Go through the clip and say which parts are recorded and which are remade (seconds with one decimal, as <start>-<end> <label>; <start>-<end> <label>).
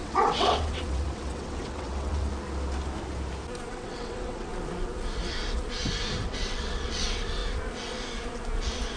0.0-2.3 remade; 2.3-3.7 recorded; 3.7-4.5 remade; 4.5-6.2 recorded; 6.2-7.4 remade; 7.4-9.0 recorded